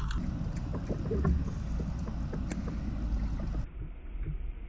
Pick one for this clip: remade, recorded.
recorded